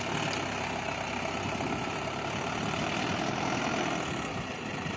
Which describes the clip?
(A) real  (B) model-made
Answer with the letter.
A